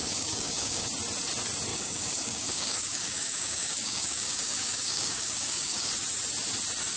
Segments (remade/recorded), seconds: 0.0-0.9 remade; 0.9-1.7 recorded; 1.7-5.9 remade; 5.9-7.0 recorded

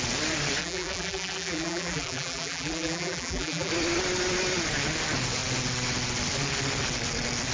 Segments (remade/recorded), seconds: 0.0-0.6 recorded; 0.6-3.7 remade; 3.7-7.5 recorded

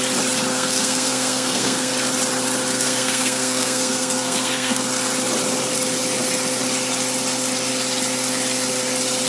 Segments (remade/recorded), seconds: 0.0-0.5 recorded; 0.5-1.9 remade; 1.9-2.7 recorded; 2.7-4.8 remade; 4.8-9.3 recorded

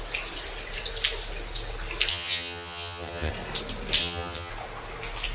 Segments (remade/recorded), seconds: 0.0-2.1 recorded; 2.1-3.3 remade; 3.3-4.0 recorded; 4.0-4.5 remade; 4.5-5.3 recorded

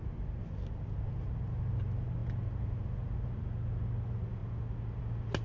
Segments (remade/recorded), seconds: 0.0-5.4 recorded

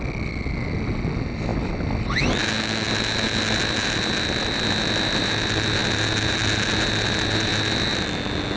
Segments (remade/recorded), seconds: 0.0-8.6 recorded